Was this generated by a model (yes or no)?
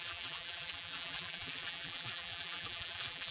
yes